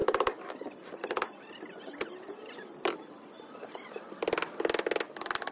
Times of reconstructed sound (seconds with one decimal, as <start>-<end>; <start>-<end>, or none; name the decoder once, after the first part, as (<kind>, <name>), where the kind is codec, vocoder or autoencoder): 0.0-2.9 (vocoder, BigVGAN v2)